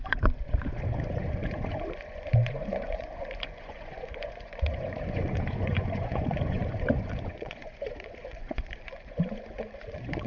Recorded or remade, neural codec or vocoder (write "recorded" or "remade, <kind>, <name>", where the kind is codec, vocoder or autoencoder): remade, vocoder, Vocos